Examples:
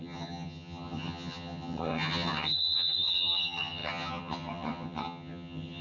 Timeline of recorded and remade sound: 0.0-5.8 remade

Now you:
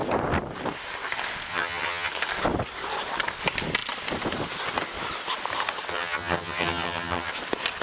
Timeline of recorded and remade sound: 0.0-1.5 recorded; 1.5-2.1 remade; 2.1-5.9 recorded; 5.9-7.3 remade; 7.3-7.8 recorded

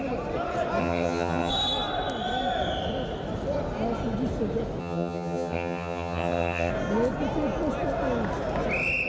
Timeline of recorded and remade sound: 0.0-0.8 recorded; 0.8-1.5 remade; 1.5-4.8 recorded; 4.8-6.7 remade; 6.7-9.1 recorded

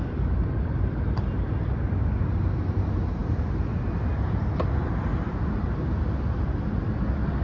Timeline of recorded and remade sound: 0.0-7.4 recorded

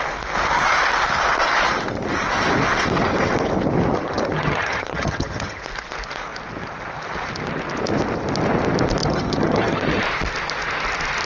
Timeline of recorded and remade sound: 0.0-3.9 recorded; 3.9-5.6 remade; 5.6-9.0 recorded; 9.0-10.0 remade; 10.0-11.2 recorded

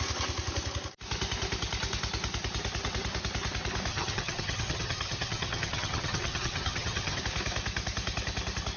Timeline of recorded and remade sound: 0.0-3.9 recorded; 3.9-7.2 remade; 7.2-8.8 recorded

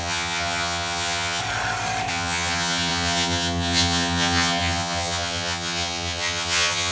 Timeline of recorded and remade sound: 0.0-1.4 remade; 1.4-2.1 recorded; 2.1-6.9 remade

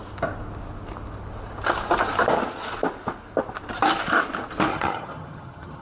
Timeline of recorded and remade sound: 0.0-4.7 recorded; 4.7-5.8 remade